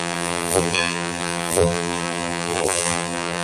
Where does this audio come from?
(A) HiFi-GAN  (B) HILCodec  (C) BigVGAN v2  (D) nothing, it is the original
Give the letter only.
C